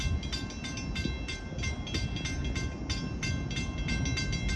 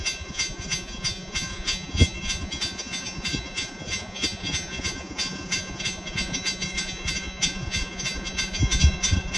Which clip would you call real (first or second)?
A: first